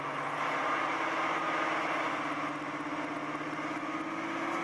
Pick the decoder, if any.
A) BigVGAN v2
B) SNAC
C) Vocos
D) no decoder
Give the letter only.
D